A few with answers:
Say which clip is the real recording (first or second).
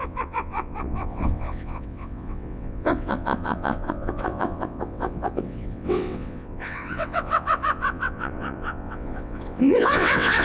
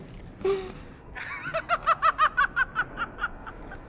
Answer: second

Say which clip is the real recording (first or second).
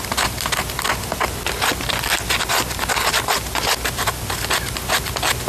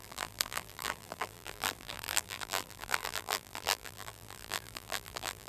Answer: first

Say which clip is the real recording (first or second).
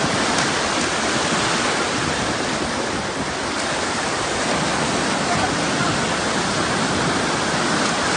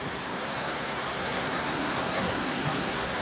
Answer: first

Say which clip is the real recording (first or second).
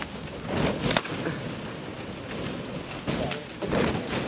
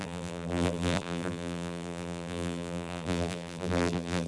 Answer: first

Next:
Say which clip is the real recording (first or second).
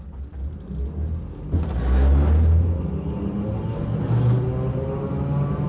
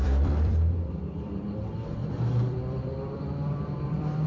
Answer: first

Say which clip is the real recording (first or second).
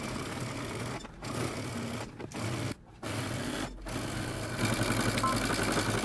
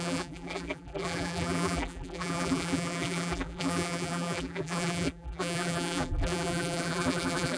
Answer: first